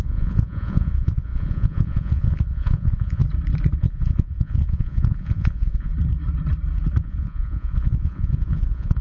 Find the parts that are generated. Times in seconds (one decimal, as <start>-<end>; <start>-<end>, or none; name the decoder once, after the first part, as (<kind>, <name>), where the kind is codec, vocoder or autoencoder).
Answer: 0.0-3.2 (vocoder, Vocos); 3.8-5.9; 7.0-9.0

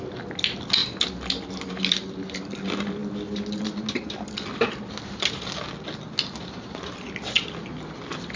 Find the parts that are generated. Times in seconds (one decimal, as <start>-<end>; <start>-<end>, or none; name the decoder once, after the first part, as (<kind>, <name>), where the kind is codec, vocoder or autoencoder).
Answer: none

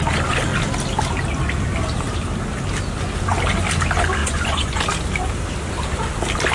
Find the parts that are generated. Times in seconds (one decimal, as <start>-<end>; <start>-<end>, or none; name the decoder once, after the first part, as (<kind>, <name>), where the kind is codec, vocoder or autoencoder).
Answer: 4.2-4.8 (vocoder, Vocos)

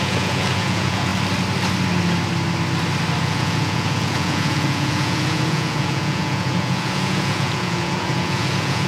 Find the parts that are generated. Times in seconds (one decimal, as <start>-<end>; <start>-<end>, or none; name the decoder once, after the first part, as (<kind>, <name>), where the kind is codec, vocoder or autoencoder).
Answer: 0.0-1.1 (vocoder, Vocos); 3.2-8.9

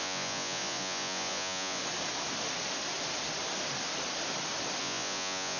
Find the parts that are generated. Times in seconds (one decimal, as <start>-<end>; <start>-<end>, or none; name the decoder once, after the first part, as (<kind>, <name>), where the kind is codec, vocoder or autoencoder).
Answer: 0.0-1.8 (vocoder, Vocos); 4.8-5.6

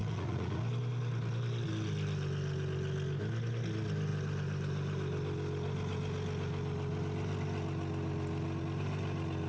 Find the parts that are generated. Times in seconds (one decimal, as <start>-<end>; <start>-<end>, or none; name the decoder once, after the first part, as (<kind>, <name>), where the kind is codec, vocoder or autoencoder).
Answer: 0.0-0.6 (vocoder, Vocos)

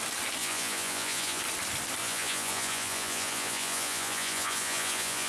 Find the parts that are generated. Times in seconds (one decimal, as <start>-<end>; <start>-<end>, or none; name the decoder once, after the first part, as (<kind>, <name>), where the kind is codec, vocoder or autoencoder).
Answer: 0.4-1.4 (vocoder, Vocos); 2.0-5.3